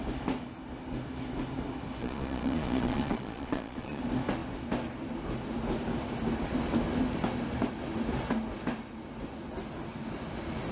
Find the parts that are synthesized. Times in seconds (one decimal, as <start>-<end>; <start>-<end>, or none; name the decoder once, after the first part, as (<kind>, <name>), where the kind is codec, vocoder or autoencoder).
2.0-4.0 (vocoder, Vocos)